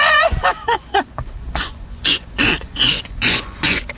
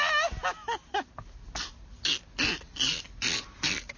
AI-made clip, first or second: first